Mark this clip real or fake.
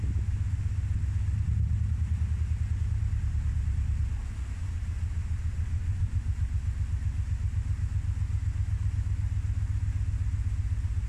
real